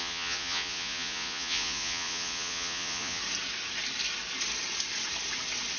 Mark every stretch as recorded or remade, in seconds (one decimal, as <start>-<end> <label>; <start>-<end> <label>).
0.0-3.2 remade; 3.2-5.8 recorded